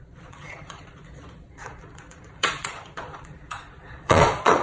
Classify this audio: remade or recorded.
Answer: remade